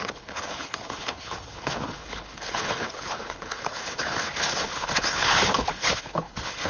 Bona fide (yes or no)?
no